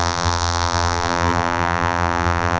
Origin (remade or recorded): remade